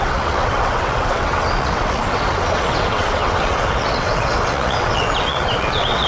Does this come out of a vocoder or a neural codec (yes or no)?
yes